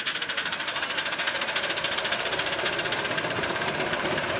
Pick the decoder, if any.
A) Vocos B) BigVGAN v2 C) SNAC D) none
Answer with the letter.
B